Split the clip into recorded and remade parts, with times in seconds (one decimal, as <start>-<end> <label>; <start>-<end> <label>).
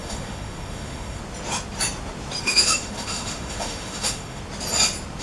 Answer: 0.0-1.2 remade; 1.2-2.4 recorded; 2.4-4.4 remade; 4.4-5.2 recorded